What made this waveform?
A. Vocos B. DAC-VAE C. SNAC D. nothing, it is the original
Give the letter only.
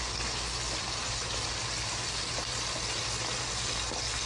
D